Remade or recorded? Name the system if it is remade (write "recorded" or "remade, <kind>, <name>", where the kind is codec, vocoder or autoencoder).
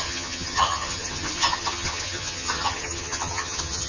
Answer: remade, vocoder, HiFi-GAN